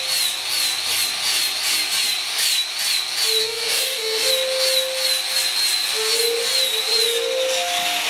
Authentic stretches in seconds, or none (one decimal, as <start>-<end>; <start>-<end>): 0.0-3.4; 4.3-8.1